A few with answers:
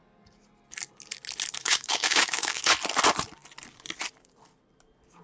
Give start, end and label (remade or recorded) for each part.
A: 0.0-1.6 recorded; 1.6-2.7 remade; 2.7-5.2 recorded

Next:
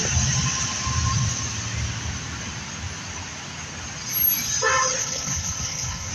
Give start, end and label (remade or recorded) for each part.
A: 0.0-5.0 recorded; 5.0-6.1 remade

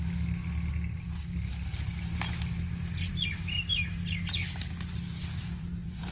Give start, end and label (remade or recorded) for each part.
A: 0.0-6.1 recorded

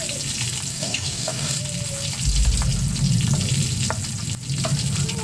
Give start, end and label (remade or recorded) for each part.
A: 0.0-0.7 recorded; 0.7-1.6 remade; 1.6-5.2 recorded